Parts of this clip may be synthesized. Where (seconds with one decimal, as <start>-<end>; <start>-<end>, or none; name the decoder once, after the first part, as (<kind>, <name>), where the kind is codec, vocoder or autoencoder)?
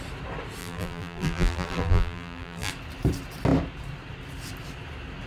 0.6-2.7 (vocoder, BigVGAN v2)